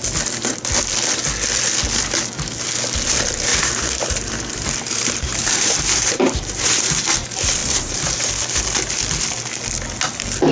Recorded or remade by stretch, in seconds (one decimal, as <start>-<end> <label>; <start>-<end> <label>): 0.0-3.5 recorded; 3.5-7.0 remade; 7.0-7.6 recorded; 7.6-8.3 remade; 8.3-10.5 recorded